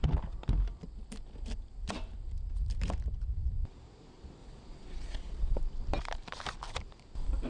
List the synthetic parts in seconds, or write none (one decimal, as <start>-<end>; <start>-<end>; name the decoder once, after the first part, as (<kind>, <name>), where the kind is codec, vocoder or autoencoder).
4.4-5.6 (vocoder, Vocos)